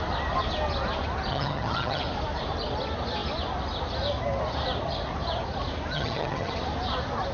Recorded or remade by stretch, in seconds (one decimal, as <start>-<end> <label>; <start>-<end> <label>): 0.0-1.3 recorded; 1.3-2.0 remade; 2.0-5.9 recorded; 5.9-6.5 remade; 6.5-7.3 recorded